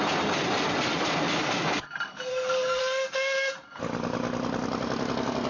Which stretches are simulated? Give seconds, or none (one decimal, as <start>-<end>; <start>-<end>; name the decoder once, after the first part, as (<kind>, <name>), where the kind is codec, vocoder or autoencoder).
2.3-2.8 (codec, DAC)